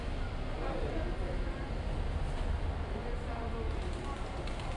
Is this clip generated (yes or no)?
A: no